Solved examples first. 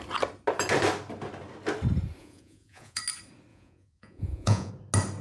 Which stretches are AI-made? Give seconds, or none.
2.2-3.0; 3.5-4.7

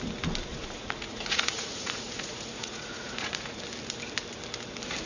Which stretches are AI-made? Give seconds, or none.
0.5-3.6

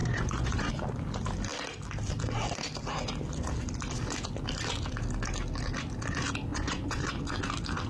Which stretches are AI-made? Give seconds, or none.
0.0-0.7; 6.5-7.1

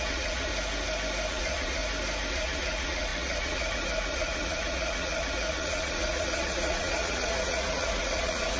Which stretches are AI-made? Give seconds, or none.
0.0-0.5; 1.3-1.8; 2.3-8.6

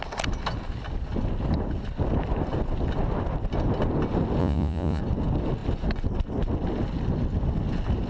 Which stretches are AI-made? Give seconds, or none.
4.4-5.0

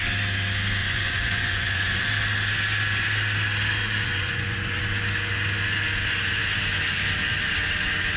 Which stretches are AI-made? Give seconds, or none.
0.8-2.0; 3.8-4.8